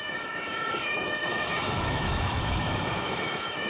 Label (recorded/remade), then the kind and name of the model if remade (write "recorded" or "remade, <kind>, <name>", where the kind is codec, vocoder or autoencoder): remade, autoencoder, DAC-VAE